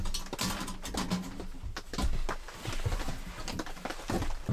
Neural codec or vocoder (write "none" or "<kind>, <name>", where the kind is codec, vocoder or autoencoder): none